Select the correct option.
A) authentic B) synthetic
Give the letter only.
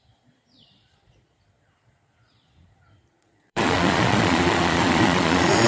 B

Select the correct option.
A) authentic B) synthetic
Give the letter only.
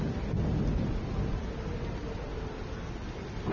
A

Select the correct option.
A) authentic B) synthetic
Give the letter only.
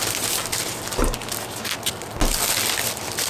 A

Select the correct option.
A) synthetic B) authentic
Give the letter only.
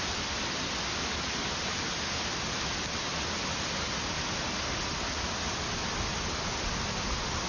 B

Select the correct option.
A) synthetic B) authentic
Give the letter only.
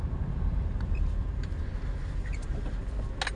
B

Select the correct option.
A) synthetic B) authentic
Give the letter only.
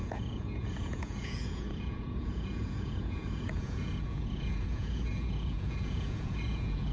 A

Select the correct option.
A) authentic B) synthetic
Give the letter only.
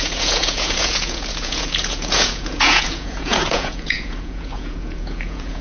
B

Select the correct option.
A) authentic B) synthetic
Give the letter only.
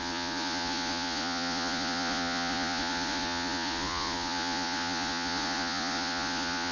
B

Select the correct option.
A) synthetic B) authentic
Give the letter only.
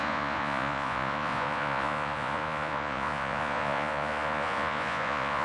A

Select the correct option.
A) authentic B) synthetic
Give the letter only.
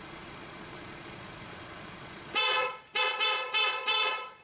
B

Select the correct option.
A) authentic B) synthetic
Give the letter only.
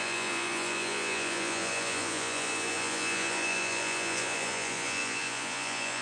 B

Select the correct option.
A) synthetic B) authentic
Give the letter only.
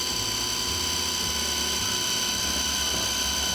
B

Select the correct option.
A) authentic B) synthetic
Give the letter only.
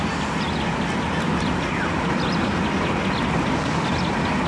A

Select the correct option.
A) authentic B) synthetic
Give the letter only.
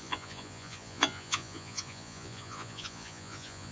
B